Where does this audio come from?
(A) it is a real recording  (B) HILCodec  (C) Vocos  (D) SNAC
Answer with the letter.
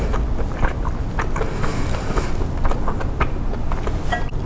A